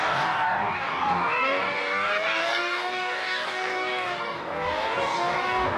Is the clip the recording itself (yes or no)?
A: no